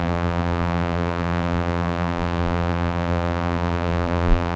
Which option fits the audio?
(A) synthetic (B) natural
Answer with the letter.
A